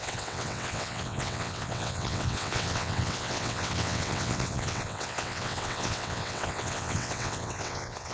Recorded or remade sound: remade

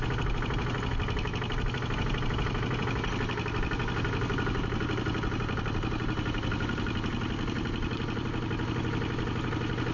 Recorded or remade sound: recorded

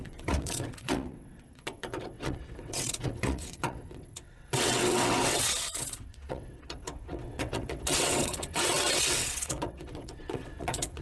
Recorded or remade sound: remade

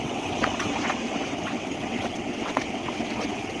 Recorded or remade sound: remade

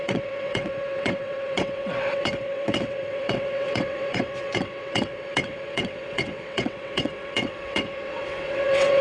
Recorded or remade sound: remade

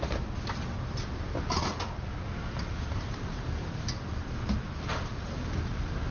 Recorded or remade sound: recorded